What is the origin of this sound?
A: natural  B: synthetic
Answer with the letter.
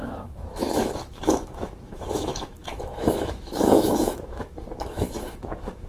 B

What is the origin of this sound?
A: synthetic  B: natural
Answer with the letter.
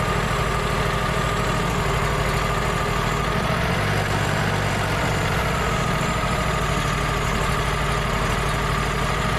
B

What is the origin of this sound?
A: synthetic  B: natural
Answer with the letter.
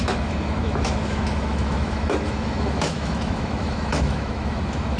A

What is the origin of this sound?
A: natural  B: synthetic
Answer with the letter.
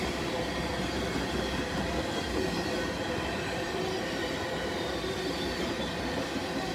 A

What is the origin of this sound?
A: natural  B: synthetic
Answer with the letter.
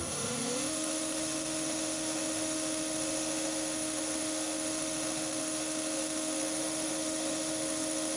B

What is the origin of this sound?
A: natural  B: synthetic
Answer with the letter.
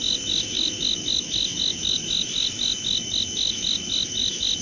B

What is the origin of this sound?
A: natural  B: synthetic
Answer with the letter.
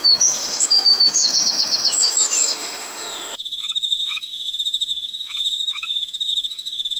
B